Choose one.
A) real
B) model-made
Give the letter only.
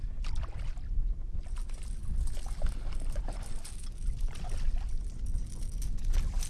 A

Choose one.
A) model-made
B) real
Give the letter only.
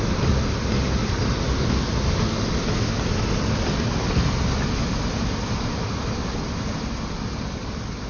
B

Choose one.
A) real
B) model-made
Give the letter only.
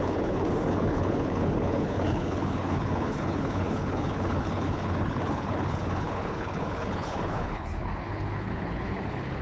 B